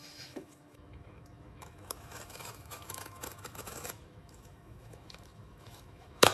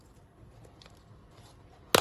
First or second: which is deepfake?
first